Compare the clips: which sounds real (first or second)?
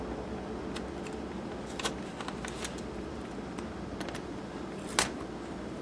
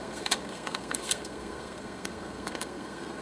first